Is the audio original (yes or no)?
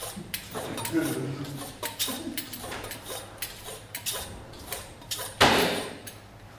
no